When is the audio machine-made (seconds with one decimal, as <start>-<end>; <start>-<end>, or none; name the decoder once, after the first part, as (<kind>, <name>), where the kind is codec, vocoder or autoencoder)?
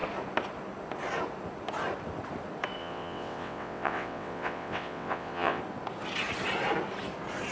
2.8-5.6 (vocoder, WaveNeXt)